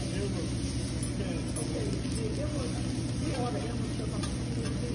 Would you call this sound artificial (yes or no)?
no